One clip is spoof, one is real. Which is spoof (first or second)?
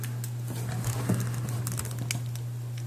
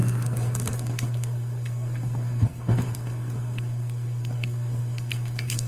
second